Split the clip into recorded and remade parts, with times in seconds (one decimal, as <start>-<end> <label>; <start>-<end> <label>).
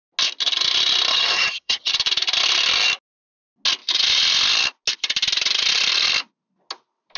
0.0-1.1 recorded; 1.1-1.9 remade; 1.9-7.2 recorded